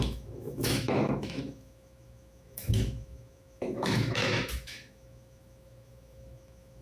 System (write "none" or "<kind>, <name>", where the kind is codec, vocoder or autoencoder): autoencoder, DAC-VAE